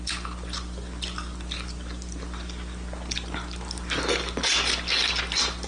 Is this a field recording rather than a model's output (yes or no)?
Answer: yes